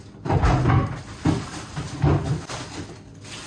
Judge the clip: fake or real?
real